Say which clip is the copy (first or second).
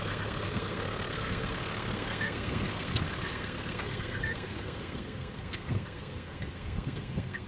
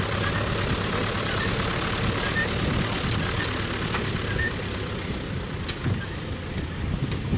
first